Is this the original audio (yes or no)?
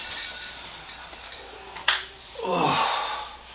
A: no